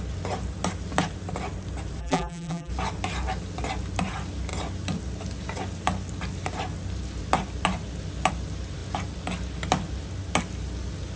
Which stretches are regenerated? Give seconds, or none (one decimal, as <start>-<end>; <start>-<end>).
2.0-2.7